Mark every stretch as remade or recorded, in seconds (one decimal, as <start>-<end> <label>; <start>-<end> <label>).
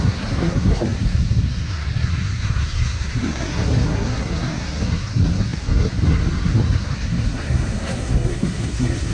0.0-9.1 remade